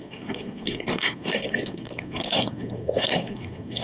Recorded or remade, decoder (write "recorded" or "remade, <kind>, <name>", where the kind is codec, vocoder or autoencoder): remade, codec, SNAC